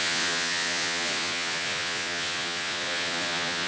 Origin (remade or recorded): remade